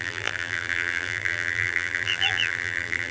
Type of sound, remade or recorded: remade